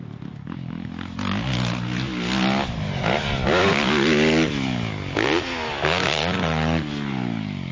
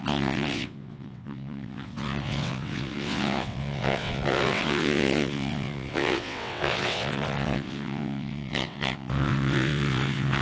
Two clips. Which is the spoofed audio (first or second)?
second